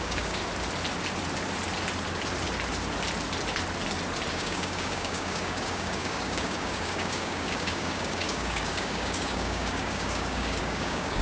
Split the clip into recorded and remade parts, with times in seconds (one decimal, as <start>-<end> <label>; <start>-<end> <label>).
0.0-0.4 remade; 0.4-4.3 recorded; 4.3-11.2 remade